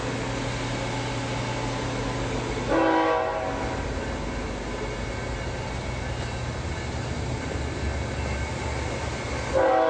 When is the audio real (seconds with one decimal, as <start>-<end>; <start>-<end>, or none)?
0.0-9.9